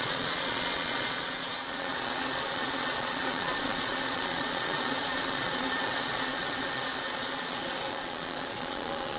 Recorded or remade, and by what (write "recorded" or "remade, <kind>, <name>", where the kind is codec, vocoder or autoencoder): remade, vocoder, Vocos